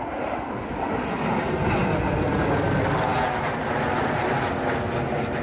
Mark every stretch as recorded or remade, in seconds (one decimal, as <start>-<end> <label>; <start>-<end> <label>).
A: 0.0-5.4 recorded